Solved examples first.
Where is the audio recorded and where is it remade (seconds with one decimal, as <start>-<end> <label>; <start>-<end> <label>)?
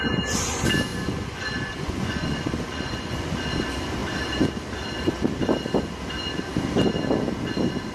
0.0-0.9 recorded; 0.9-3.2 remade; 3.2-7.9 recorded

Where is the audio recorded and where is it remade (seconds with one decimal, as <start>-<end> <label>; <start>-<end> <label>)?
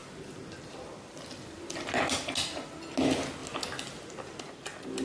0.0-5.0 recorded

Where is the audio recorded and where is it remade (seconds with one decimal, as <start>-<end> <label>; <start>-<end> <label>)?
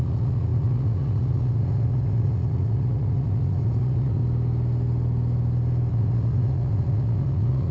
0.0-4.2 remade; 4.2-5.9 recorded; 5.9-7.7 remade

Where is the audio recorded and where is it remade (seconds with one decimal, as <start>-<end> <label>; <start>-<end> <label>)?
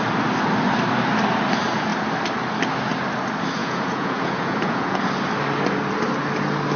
0.0-3.6 recorded; 3.6-5.0 remade; 5.0-6.8 recorded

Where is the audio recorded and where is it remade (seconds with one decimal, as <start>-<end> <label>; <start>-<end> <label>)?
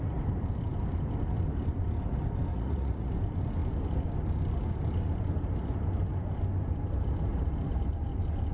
0.0-2.5 recorded; 2.5-3.1 remade; 3.1-8.5 recorded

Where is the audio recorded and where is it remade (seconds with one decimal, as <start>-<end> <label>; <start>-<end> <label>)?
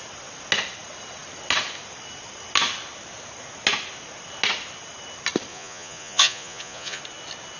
0.0-5.5 recorded; 5.5-7.0 remade; 7.0-7.6 recorded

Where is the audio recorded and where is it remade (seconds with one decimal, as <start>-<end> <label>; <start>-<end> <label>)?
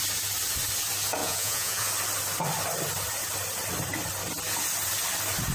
0.0-1.2 recorded; 1.2-1.9 remade; 1.9-5.5 recorded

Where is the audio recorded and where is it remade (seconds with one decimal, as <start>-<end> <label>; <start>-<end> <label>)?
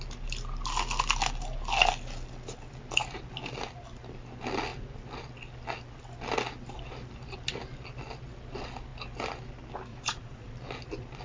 0.0-9.9 recorded; 9.9-10.5 remade; 10.5-11.2 recorded